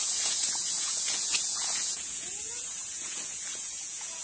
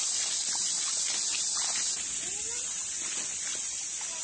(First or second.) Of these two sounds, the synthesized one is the first